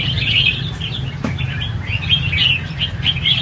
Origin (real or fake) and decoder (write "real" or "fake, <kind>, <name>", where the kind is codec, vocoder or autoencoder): real